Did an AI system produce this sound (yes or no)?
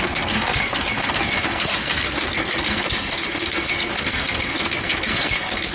yes